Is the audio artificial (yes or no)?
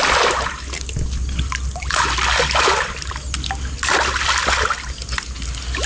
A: no